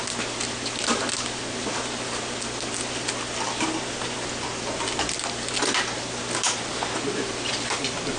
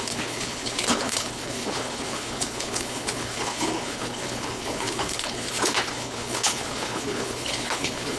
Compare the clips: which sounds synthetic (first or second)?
second